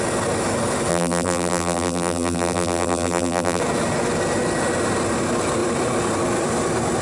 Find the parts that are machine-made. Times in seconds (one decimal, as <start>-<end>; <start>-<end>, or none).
0.9-3.6